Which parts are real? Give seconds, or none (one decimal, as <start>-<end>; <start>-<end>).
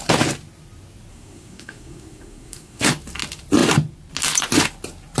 0.0-1.1; 2.9-5.2